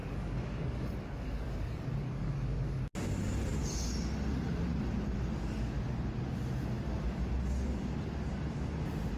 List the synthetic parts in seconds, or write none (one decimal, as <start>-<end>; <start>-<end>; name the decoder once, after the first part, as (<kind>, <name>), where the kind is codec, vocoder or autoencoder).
0.0-2.9 (codec, DAC)